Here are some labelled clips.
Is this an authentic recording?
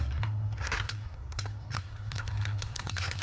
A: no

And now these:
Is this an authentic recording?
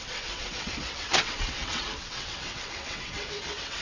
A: no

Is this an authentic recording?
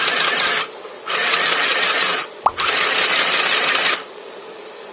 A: no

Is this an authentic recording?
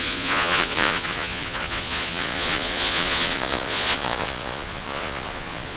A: no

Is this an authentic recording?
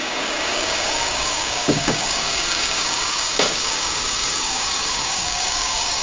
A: no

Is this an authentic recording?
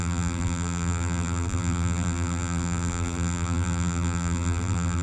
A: no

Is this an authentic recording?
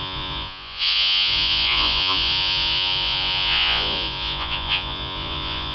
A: no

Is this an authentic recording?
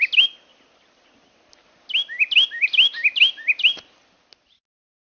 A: yes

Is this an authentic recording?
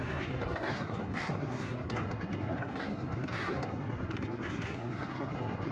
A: no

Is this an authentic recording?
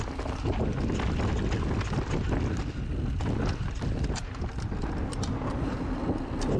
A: yes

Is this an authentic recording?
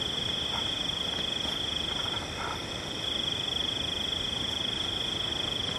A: yes